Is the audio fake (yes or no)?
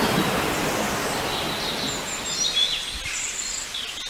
no